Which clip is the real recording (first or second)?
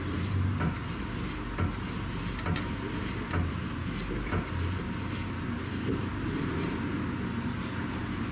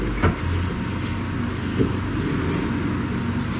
second